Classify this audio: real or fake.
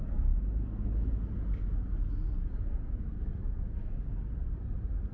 real